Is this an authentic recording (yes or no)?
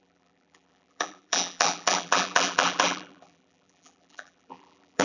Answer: no